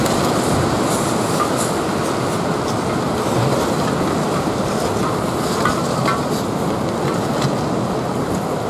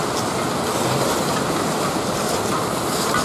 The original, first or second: first